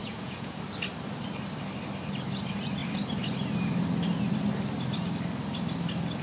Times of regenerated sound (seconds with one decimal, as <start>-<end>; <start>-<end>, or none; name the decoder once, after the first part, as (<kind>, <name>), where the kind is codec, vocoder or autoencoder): 0.0-0.6 (vocoder, Vocos)